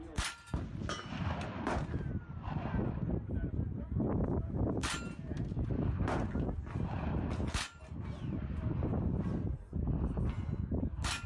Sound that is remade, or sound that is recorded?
recorded